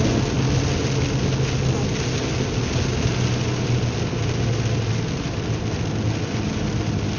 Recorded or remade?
recorded